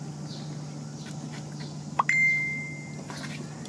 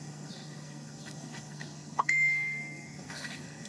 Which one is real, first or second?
first